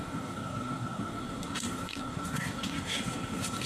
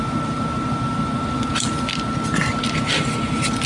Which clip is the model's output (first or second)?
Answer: first